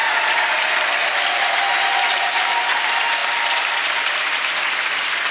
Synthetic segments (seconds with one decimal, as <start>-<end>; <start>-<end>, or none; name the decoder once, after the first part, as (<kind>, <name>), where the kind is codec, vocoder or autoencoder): 3.2-4.1 (vocoder, BigVGAN v2)